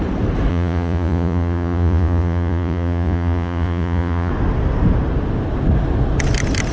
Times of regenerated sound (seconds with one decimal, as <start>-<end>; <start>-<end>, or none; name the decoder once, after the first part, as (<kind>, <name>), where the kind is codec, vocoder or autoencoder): 0.5-4.3 (vocoder, Vocos)